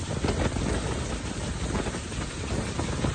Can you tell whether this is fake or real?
real